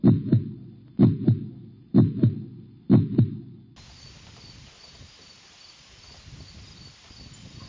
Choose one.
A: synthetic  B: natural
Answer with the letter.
B